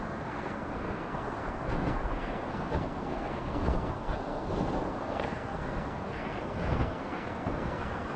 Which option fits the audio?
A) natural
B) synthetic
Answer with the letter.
B